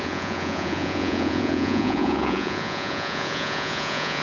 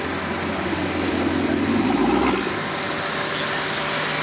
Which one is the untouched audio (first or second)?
second